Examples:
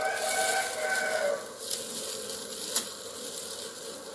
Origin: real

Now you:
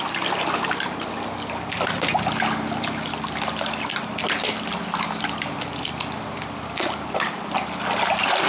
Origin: real